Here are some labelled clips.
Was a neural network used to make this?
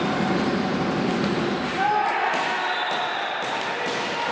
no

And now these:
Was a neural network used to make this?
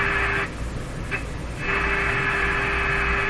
no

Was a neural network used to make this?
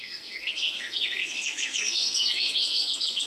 yes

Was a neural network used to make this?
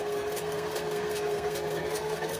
yes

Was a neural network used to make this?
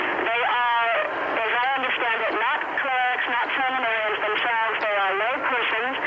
no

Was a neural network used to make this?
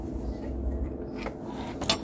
no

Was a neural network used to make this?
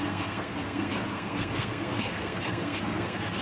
yes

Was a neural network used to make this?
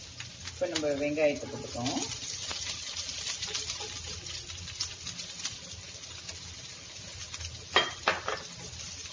no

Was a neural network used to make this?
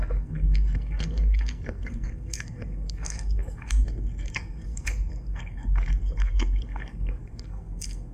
yes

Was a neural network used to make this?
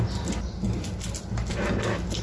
no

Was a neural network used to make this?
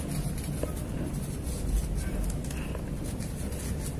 no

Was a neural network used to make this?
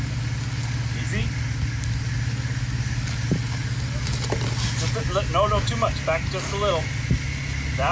no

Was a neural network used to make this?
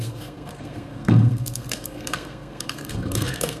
yes